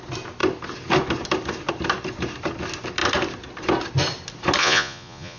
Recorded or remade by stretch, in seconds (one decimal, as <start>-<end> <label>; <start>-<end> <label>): 0.0-4.6 recorded; 4.6-5.4 remade